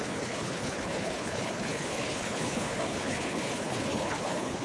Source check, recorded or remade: remade